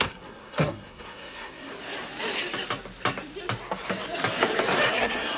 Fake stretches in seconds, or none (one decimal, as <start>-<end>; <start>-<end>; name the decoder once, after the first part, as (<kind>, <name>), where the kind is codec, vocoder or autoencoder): 0.0-1.7 (codec, SNAC); 4.9-5.4